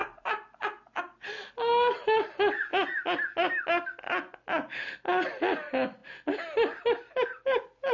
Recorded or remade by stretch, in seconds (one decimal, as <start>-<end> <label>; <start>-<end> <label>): 0.0-7.9 recorded